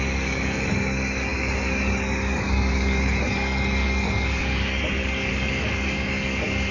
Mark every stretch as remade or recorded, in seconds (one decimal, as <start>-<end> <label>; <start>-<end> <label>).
0.0-6.7 remade